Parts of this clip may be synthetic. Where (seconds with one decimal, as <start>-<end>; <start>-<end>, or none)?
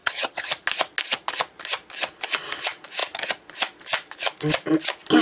0.0-0.5